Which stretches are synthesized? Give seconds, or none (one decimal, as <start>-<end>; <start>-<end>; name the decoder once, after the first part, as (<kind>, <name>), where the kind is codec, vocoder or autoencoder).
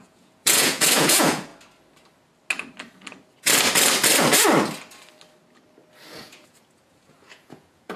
0.0-1.5 (vocoder, Vocos); 6.2-8.0